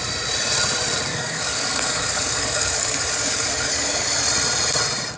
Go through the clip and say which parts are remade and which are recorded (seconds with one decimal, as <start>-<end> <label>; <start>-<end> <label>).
0.0-1.1 recorded; 1.1-4.2 remade; 4.2-5.2 recorded